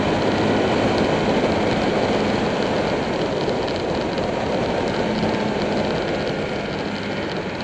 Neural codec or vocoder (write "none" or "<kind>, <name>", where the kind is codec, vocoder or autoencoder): none